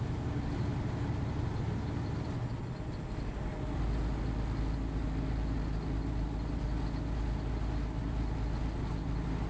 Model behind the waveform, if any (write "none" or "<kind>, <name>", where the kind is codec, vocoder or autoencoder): none